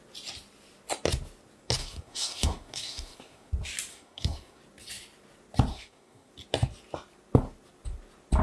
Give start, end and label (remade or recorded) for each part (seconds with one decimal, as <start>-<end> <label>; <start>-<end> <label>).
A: 0.0-1.8 recorded; 1.8-3.5 remade; 3.5-3.9 recorded; 3.9-4.6 remade; 4.6-5.7 recorded; 5.7-6.3 remade; 6.3-8.4 recorded